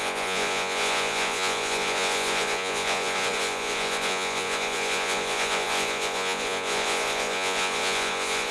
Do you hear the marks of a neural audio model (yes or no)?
yes